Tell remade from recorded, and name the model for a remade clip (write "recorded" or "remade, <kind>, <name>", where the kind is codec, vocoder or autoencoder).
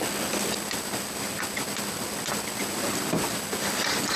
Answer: recorded